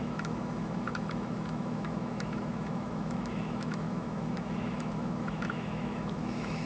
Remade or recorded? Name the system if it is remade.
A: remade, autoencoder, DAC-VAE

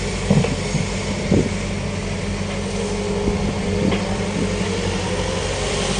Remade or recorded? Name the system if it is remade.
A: recorded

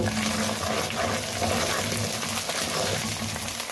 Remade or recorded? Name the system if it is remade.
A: recorded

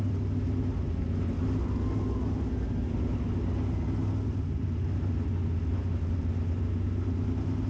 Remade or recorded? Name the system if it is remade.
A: recorded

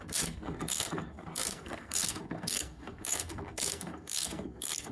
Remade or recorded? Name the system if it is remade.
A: remade, codec, SNAC